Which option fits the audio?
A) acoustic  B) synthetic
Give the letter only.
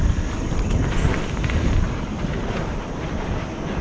A